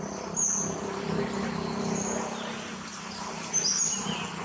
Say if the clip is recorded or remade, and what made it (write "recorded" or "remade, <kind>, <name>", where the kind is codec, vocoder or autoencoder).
recorded